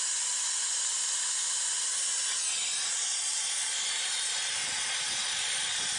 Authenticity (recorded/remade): recorded